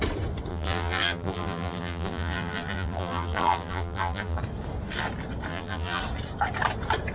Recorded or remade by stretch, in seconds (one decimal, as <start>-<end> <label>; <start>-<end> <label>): 0.0-0.5 recorded; 0.5-4.4 remade; 4.4-5.5 recorded; 5.5-6.0 remade; 6.0-7.1 recorded